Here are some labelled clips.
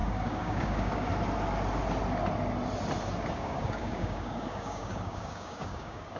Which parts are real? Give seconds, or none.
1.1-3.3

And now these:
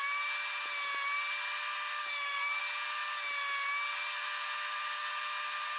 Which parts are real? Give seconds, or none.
0.0-2.0; 2.6-5.8

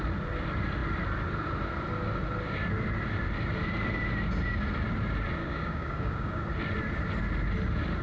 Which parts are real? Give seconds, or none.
0.0-5.4; 6.4-8.0

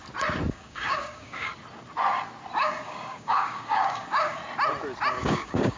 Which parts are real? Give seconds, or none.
0.0-0.5; 1.5-2.6; 4.4-5.1

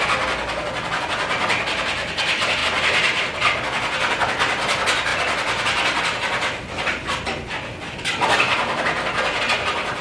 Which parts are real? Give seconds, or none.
0.0-10.0

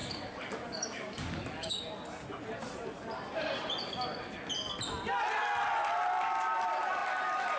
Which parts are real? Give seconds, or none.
1.8-7.6

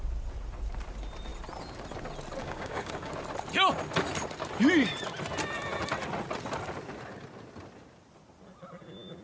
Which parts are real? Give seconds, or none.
0.0-2.4; 3.1-9.2